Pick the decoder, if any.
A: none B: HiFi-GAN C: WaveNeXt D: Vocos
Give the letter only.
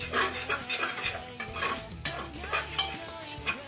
A